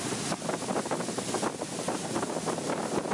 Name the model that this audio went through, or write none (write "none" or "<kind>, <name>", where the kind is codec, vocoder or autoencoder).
none